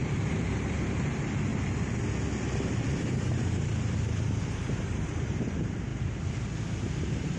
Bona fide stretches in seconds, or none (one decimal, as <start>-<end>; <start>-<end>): 1.5-4.5; 5.9-7.0